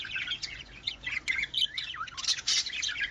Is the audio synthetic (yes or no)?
yes